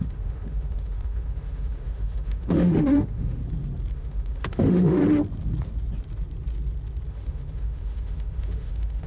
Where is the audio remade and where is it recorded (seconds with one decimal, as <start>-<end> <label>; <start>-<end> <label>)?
0.0-3.4 remade; 3.4-3.9 recorded; 3.9-5.0 remade; 5.0-7.1 recorded; 7.1-9.1 remade